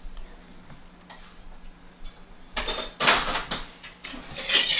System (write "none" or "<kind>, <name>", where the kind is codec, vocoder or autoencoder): none